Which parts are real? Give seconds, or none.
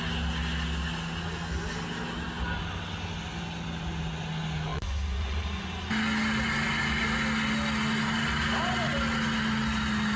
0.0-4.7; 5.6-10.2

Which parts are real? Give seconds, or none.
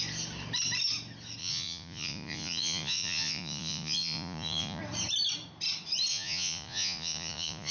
0.0-1.4; 4.8-6.1